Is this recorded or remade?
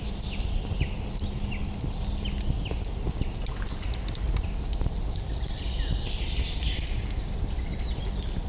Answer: recorded